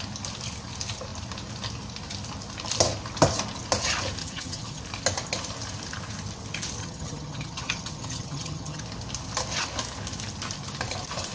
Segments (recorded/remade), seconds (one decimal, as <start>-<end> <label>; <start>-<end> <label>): 0.0-4.2 recorded; 4.2-4.8 remade; 4.8-6.8 recorded; 6.8-8.8 remade; 8.8-11.3 recorded